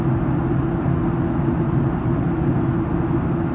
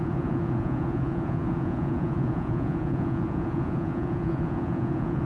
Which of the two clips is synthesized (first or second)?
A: second